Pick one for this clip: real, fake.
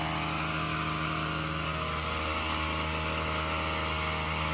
real